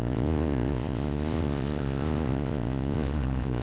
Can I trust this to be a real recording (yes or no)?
no